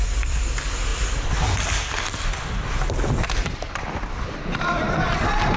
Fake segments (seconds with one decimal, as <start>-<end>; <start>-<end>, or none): 0.9-2.5